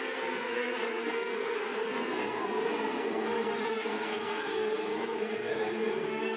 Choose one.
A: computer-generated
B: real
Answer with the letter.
A